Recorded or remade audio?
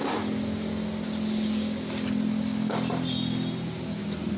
recorded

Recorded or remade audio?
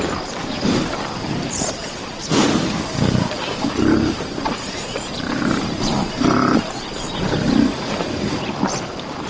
remade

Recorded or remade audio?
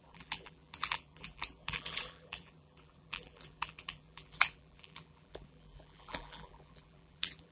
remade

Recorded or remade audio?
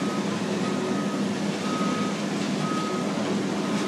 recorded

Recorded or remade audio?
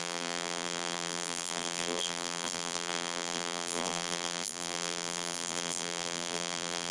remade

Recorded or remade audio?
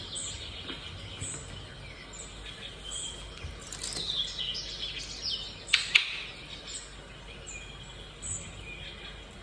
recorded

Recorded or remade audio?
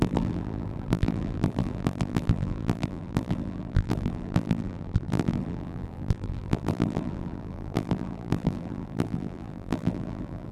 remade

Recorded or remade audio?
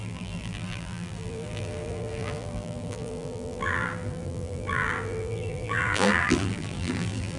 remade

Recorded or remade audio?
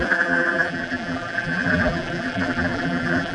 remade